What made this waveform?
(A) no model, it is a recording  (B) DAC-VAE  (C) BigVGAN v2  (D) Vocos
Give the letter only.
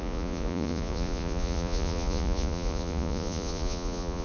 D